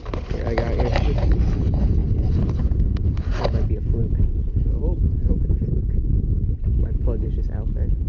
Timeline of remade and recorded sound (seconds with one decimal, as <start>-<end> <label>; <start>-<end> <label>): 0.0-8.1 recorded